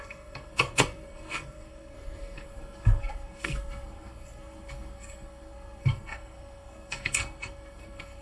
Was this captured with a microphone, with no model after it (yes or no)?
no